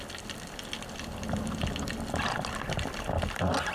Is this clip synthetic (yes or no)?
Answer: no